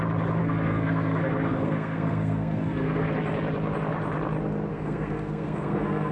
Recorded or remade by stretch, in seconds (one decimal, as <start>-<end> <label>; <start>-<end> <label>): 0.0-0.4 recorded; 0.4-3.1 remade; 3.1-4.7 recorded; 4.7-6.1 remade